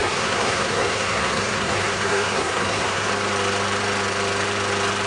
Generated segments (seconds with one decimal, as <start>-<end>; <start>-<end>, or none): 0.0-3.1